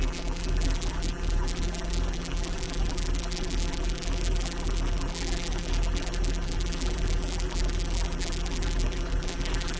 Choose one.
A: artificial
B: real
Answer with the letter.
A